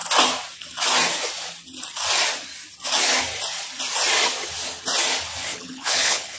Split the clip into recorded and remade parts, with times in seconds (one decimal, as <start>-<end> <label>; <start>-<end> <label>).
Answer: 0.0-5.5 recorded; 5.5-6.4 remade